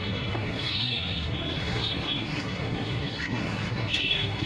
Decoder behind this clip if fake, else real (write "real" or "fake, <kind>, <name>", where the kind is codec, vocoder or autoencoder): fake, codec, SNAC